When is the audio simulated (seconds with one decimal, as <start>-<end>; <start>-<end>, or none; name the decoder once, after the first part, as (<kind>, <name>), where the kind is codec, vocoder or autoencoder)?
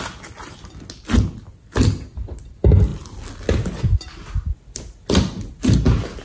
none